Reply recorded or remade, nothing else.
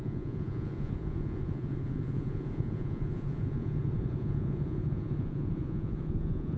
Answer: remade